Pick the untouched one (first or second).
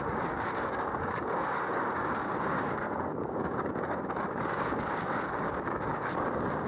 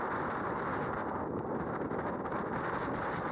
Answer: second